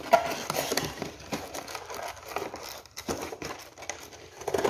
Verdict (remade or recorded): recorded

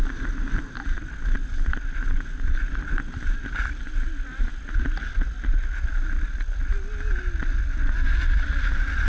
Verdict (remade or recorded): recorded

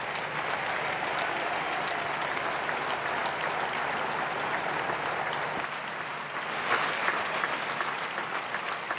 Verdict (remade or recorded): recorded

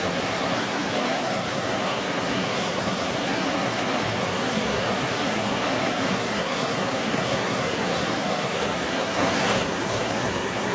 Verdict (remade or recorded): remade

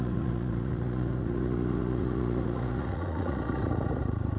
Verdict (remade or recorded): remade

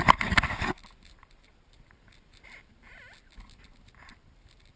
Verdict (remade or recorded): recorded